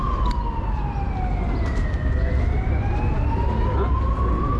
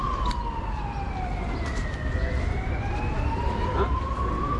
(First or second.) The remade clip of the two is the second